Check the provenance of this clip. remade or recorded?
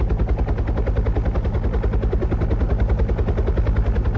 recorded